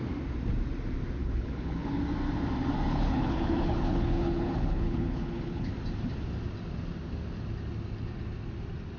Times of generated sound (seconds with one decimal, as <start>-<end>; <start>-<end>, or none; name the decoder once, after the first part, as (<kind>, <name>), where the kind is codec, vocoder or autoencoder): 1.2-2.0 (codec, HILCodec); 2.9-5.7